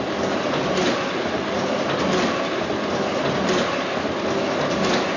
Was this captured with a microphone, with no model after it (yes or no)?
yes